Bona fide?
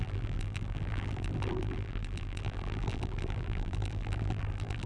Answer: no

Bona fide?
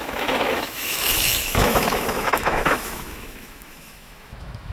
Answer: no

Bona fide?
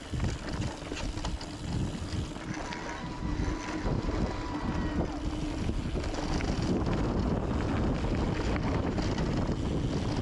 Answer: yes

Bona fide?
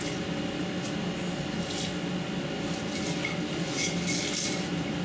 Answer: yes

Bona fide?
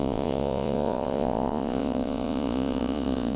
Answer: no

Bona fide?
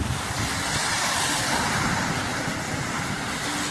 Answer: yes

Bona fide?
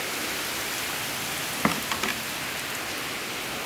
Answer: yes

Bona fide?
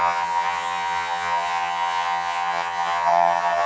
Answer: no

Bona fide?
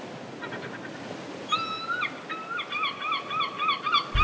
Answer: yes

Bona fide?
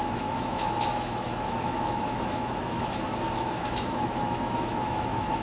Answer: no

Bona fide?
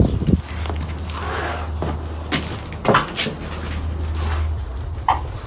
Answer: yes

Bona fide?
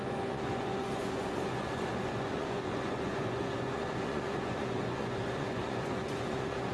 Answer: no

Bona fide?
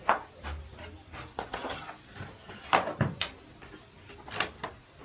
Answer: yes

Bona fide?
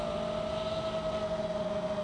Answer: yes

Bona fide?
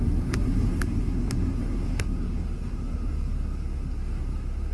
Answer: no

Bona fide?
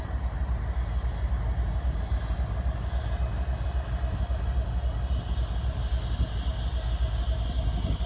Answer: yes